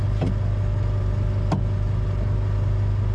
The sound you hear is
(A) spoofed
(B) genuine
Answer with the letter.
B